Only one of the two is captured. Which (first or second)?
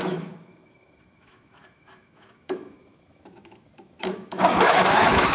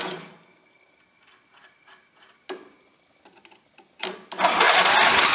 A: second